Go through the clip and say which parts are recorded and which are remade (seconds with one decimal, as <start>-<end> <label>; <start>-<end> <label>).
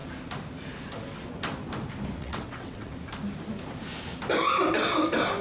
0.0-2.2 recorded; 2.2-2.9 remade; 2.9-5.4 recorded